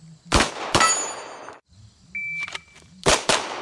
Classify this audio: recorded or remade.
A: recorded